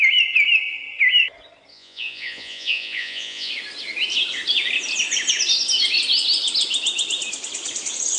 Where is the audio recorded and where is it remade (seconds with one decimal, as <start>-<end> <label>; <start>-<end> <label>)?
0.0-1.7 recorded; 1.7-3.5 remade; 3.5-8.2 recorded